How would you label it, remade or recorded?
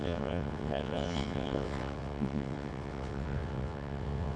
remade